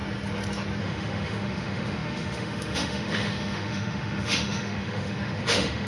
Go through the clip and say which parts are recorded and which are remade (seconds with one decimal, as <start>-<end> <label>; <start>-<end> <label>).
0.0-0.8 recorded; 0.8-5.9 remade